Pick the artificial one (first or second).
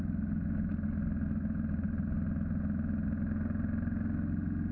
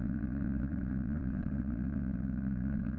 second